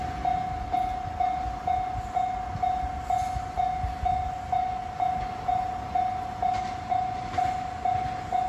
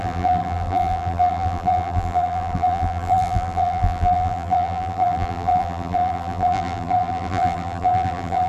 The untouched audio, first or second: first